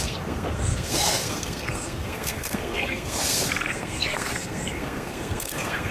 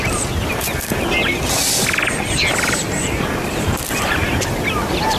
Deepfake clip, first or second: first